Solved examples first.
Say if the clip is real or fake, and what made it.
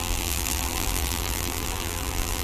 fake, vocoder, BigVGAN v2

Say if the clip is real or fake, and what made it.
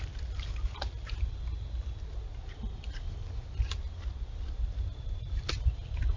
real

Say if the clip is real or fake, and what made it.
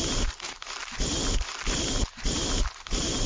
real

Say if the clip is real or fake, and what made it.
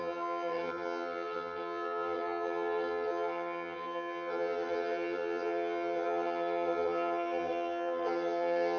fake, vocoder, HiFi-GAN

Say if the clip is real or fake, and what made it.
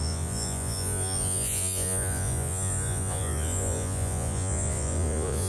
fake, vocoder, Vocos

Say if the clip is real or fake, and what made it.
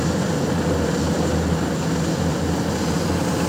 real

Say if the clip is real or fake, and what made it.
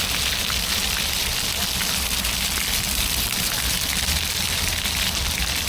real